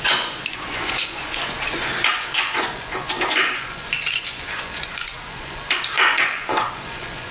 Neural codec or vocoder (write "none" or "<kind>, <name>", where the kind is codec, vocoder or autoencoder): vocoder, Vocos